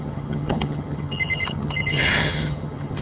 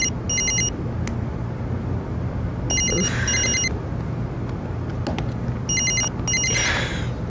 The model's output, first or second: first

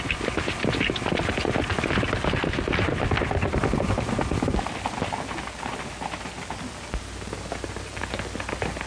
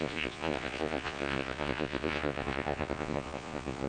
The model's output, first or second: second